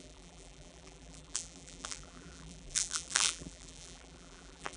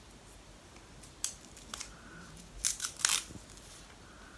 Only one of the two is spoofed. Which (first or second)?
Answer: first